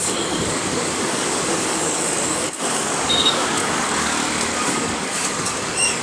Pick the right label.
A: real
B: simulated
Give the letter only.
B